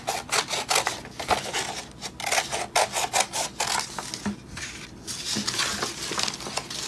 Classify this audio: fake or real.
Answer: real